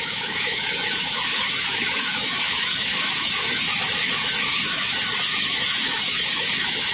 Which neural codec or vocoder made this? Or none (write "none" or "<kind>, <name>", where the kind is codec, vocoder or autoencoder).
autoencoder, DAC-VAE